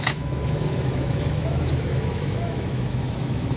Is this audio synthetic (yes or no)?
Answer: yes